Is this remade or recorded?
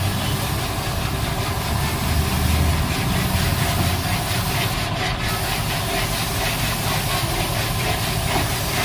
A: recorded